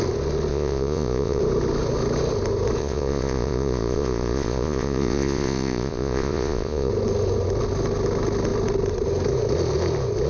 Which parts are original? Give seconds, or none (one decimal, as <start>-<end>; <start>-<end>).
0.0-0.5; 1.4-2.8; 6.9-10.3